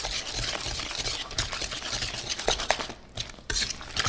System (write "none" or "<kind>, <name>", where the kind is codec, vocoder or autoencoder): none